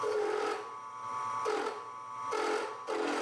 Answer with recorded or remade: recorded